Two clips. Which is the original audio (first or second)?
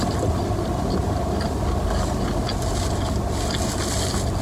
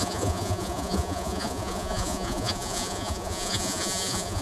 first